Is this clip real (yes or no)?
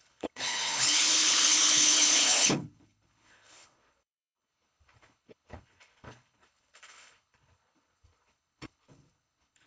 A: no